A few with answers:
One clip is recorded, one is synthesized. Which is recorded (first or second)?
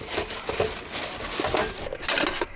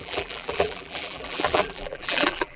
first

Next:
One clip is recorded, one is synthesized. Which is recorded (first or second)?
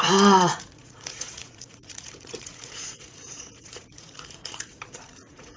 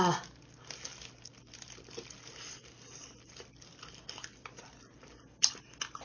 second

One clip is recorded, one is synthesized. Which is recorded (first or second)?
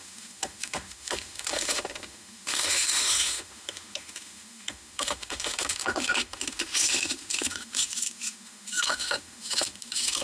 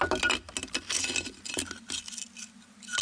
second